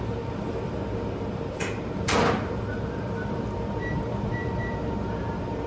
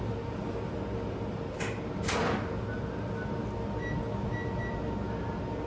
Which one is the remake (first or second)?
first